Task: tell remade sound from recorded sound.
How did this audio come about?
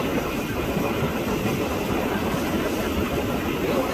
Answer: recorded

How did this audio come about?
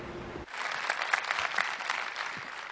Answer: recorded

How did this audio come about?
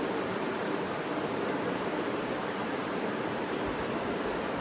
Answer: remade